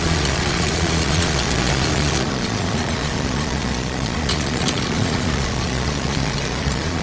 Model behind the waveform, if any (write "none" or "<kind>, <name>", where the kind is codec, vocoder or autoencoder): vocoder, Vocos